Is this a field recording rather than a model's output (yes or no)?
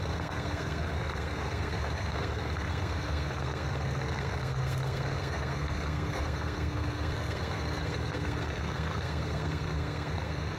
no